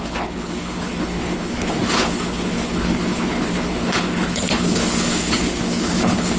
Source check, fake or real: fake